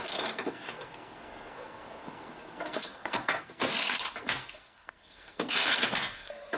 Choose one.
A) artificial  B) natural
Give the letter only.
A